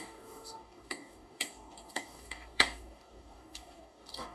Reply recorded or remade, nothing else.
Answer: remade